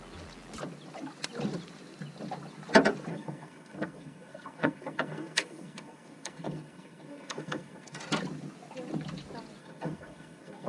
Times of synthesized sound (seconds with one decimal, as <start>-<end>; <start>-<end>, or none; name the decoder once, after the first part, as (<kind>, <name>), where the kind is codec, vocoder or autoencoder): 3.1-8.0 (codec, SNAC); 9.6-10.7